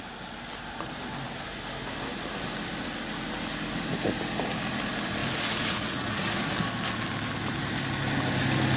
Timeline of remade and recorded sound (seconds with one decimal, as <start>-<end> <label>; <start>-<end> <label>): 0.0-5.2 recorded; 5.2-6.5 remade; 6.5-8.8 recorded